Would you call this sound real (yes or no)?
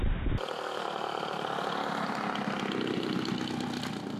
yes